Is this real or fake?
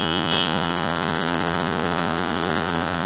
fake